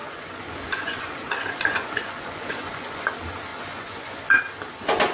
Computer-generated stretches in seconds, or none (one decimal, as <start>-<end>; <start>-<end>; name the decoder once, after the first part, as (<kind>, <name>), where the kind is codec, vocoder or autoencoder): 0.0-3.1 (vocoder, Vocos); 3.5-4.4